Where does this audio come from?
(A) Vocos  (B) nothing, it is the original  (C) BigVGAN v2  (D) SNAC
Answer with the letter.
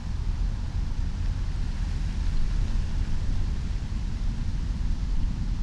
B